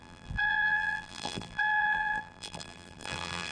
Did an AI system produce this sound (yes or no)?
yes